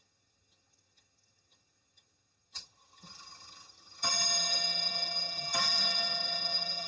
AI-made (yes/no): yes